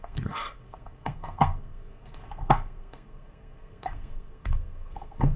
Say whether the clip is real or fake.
fake